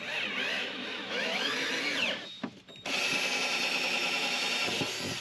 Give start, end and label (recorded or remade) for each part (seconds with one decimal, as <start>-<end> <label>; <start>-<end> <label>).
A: 0.0-0.5 recorded; 0.5-1.7 remade; 1.7-3.7 recorded; 3.7-4.4 remade; 4.4-5.2 recorded